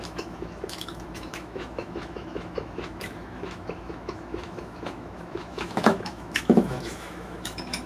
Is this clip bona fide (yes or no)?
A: no